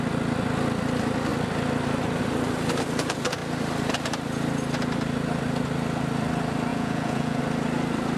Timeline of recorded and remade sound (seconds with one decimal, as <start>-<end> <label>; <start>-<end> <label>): 0.0-6.7 recorded; 6.7-7.4 remade; 7.4-8.2 recorded